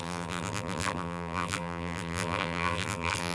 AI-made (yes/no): yes